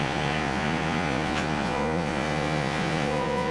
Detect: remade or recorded remade